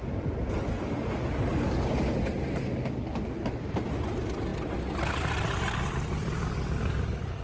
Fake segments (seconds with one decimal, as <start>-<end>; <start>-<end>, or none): none